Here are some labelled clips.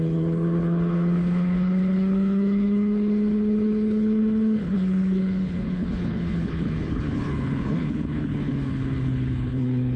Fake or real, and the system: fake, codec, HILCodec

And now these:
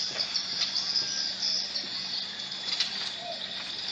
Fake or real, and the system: real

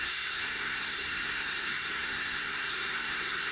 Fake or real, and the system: fake, codec, SNAC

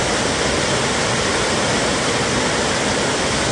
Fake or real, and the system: real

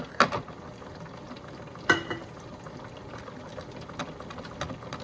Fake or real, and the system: real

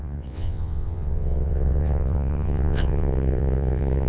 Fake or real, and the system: fake, vocoder, WaveNeXt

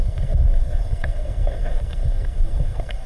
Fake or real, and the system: fake, codec, SNAC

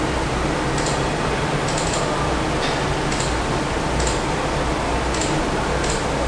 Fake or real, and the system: fake, vocoder, BigVGAN v2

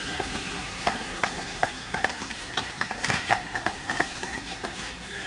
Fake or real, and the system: fake, codec, SNAC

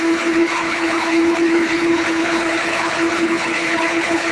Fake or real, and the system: fake, codec, HILCodec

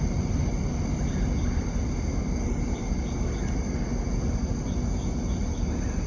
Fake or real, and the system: real